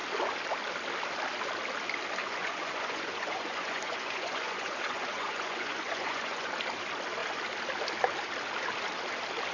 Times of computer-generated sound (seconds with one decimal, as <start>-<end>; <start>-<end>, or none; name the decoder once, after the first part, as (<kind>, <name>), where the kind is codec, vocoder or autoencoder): 2.2-6.5 (vocoder, Vocos)